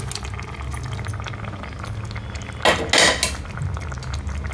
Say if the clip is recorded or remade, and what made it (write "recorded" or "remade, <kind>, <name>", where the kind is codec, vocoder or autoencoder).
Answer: recorded